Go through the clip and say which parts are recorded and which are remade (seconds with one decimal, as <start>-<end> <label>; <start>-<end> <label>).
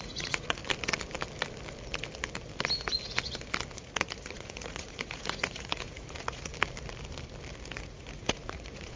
0.0-0.6 remade; 0.6-3.8 recorded; 3.8-6.5 remade; 6.5-7.8 recorded; 7.8-9.0 remade